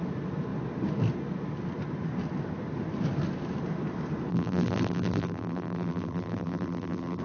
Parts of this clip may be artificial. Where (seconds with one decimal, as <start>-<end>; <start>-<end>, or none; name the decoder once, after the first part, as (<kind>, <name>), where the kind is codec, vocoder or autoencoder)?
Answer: 4.3-7.2 (vocoder, BigVGAN v2)